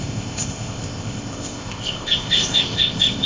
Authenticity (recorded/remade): remade